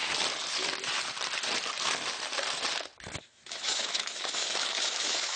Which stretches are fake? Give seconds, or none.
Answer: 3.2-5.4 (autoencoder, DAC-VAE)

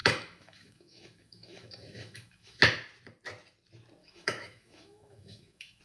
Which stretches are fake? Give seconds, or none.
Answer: 0.0-2.6 (autoencoder, DAC-VAE); 4.0-5.8

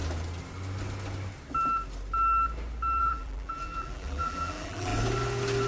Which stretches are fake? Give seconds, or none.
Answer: 3.0-4.9 (vocoder, BigVGAN v2)

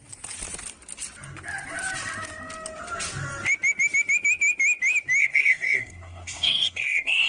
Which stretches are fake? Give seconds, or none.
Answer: 5.2-7.3 (codec, SNAC)